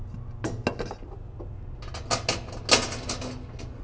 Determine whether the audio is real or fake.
real